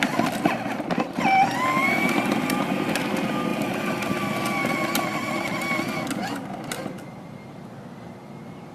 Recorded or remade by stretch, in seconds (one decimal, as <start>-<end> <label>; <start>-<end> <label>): 0.0-1.8 recorded; 1.8-2.7 remade; 2.7-3.5 recorded; 3.5-5.4 remade; 5.4-8.7 recorded